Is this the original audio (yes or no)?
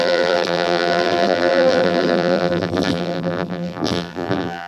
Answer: no